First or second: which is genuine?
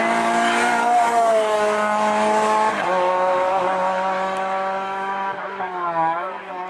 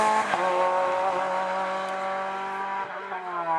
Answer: second